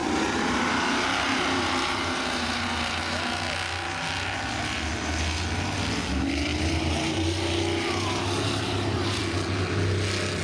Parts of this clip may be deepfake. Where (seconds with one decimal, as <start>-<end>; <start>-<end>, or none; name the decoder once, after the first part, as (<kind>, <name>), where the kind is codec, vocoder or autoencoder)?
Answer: 0.0-3.0 (vocoder, BigVGAN v2); 6.5-9.2